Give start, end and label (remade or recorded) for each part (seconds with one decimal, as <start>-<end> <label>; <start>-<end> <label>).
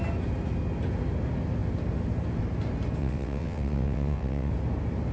0.0-3.0 recorded; 3.0-4.5 remade; 4.5-5.1 recorded